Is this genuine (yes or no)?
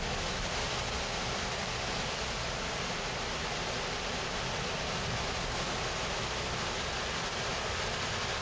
yes